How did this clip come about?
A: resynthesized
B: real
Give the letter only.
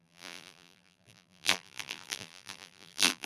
A